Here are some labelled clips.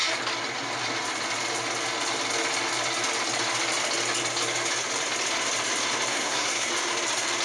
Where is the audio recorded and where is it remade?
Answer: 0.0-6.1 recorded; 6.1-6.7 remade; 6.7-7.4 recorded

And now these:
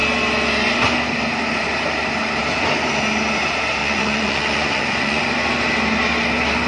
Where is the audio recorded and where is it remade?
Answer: 0.0-3.8 recorded; 3.8-5.2 remade; 5.2-6.7 recorded

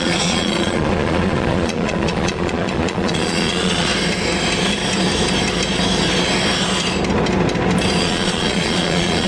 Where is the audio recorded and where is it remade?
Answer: 0.0-3.9 remade; 3.9-8.0 recorded; 8.0-9.3 remade

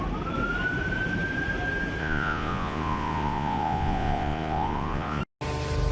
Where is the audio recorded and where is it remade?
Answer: 0.0-2.0 recorded; 2.0-5.2 remade; 5.2-5.9 recorded

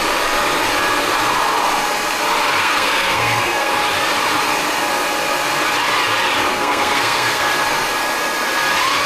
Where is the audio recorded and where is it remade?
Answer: 0.0-2.6 recorded; 2.6-3.7 remade; 3.7-6.5 recorded; 6.5-7.5 remade; 7.5-9.1 recorded